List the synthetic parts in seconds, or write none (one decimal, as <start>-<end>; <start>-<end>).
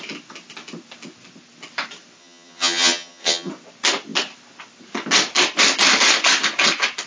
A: 2.2-3.5